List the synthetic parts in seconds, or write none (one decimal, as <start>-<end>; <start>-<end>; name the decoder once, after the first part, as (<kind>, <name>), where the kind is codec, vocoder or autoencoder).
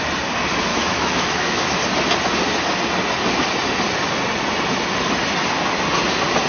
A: 0.7-1.8 (autoencoder, DAC-VAE)